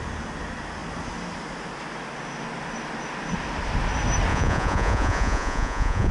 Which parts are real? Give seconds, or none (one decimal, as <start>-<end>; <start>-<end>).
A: 0.0-4.3